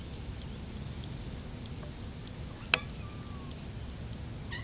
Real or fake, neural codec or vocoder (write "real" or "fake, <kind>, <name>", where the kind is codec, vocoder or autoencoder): real